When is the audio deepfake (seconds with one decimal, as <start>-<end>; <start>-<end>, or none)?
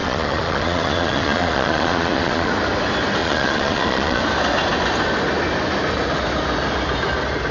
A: 0.0-2.5; 3.2-4.2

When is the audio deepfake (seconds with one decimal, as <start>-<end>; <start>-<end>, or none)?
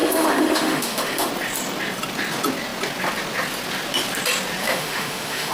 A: 0.0-1.3; 4.6-5.5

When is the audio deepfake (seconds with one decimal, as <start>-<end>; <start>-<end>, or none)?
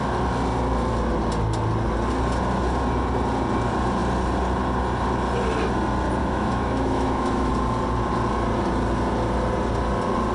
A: 6.2-7.5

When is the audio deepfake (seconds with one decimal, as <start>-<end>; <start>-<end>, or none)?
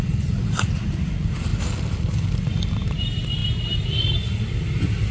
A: 0.0-1.5; 3.0-3.4; 4.1-5.1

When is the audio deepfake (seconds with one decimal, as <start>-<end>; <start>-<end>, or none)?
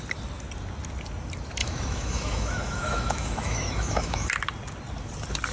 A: 1.6-4.3